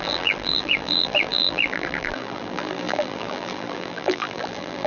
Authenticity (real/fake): fake